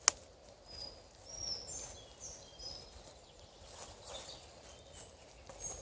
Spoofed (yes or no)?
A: no